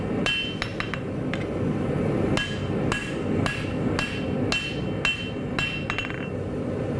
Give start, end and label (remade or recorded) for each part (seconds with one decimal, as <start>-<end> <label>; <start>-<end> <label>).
0.0-7.0 recorded